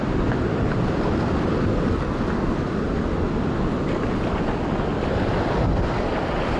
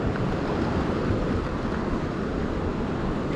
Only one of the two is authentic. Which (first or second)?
first